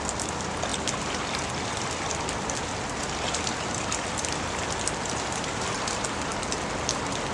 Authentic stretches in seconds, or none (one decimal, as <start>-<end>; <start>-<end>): 0.0-7.3